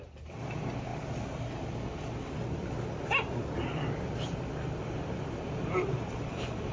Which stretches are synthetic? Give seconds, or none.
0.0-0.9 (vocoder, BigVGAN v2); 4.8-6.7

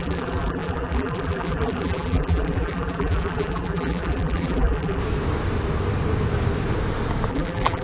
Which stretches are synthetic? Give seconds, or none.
0.0-5.0 (vocoder, BigVGAN v2); 7.3-7.8

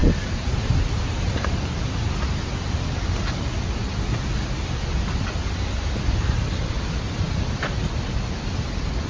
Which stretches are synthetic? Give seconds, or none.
0.0-1.5 (vocoder, BigVGAN v2)